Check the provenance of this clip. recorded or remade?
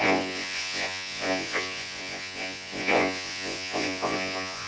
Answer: remade